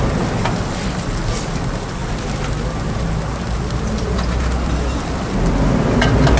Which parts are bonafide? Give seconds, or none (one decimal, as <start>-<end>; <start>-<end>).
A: 0.0-6.4